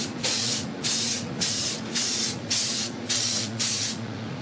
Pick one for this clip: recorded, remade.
remade